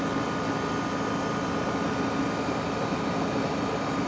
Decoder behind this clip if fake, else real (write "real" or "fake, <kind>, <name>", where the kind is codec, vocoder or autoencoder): real